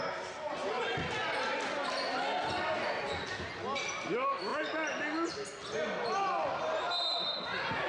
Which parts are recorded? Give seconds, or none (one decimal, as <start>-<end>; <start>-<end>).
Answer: 0.0-7.9

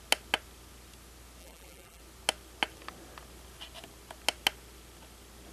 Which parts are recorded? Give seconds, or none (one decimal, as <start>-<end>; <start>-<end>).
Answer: 0.0-1.4; 2.0-5.5

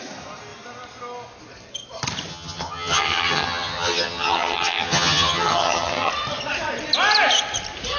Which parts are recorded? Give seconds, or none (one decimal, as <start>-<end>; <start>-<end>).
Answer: 0.0-2.3; 6.1-8.0

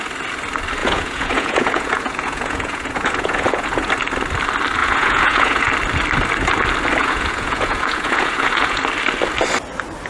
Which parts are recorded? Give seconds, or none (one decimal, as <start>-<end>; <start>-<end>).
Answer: 0.0-0.8; 3.9-4.8; 5.7-7.0; 8.8-10.1